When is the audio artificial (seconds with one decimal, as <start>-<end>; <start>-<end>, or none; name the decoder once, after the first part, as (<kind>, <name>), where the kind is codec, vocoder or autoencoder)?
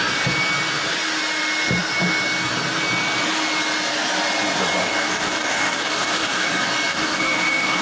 4.8-6.5 (codec, DAC); 6.9-7.8